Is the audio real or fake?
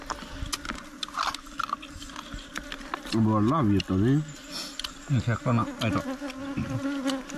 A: real